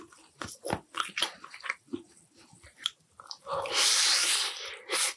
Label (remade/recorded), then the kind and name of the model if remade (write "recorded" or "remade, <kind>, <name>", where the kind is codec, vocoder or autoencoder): remade, vocoder, BigVGAN v2